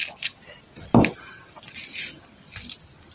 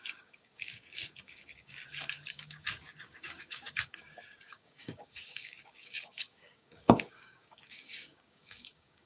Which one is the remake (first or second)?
second